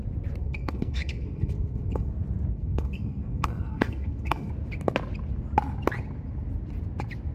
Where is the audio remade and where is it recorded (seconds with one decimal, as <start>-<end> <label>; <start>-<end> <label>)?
0.0-0.4 recorded; 0.4-2.1 remade; 2.1-2.5 recorded; 2.5-4.5 remade; 4.5-7.3 recorded